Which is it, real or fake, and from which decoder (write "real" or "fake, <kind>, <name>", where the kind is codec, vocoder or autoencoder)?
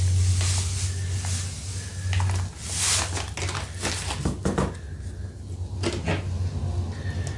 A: real